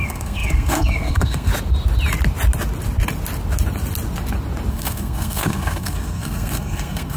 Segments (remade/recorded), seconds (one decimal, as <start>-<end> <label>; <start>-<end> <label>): 0.0-1.5 remade; 1.5-4.7 recorded; 4.7-7.2 remade